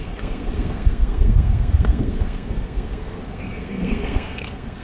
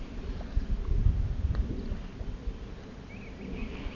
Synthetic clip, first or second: first